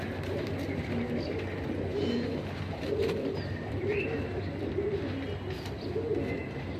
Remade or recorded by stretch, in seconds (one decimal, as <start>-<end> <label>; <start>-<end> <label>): 0.0-6.8 recorded